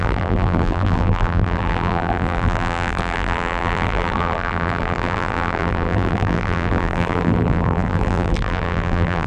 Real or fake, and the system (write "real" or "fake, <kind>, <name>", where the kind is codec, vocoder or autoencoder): fake, vocoder, BigVGAN v2